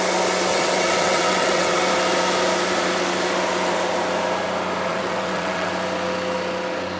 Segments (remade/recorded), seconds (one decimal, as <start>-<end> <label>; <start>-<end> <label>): 0.0-0.5 recorded; 0.5-1.8 remade; 1.8-4.9 recorded; 4.9-5.7 remade; 5.7-7.0 recorded